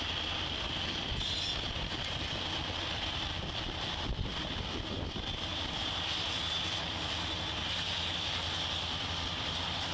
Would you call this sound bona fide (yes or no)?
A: no